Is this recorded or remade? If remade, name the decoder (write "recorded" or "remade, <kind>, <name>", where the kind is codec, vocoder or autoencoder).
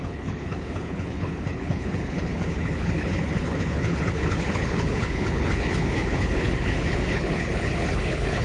remade, codec, HILCodec